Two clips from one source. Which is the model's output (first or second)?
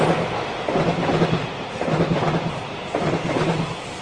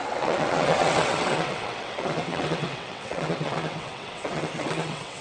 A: second